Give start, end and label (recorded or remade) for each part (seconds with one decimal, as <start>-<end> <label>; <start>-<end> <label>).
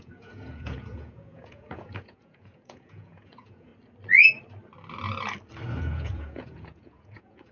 0.0-3.7 remade; 3.7-5.8 recorded; 5.8-7.5 remade